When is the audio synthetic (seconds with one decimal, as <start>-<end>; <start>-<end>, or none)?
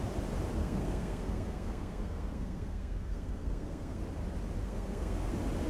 0.6-4.0; 4.6-5.3